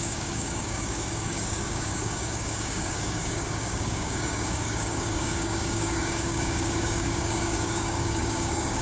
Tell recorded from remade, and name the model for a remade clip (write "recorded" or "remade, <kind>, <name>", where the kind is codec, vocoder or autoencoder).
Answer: remade, codec, DAC